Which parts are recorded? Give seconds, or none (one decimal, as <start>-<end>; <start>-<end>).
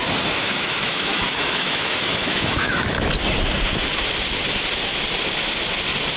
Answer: 0.0-0.4; 3.1-6.2